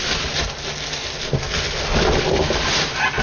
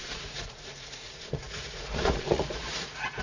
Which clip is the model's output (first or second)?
second